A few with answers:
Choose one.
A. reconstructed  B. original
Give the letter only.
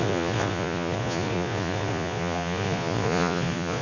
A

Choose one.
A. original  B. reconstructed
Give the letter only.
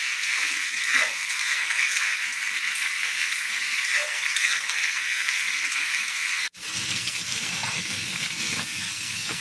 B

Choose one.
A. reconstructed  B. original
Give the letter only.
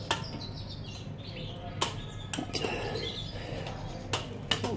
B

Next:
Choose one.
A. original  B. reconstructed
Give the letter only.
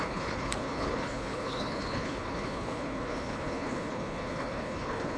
B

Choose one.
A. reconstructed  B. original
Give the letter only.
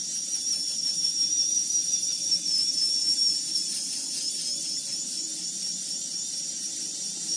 A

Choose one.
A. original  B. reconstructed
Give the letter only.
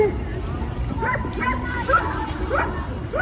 B